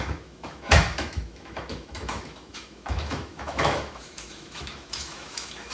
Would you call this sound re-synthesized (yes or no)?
yes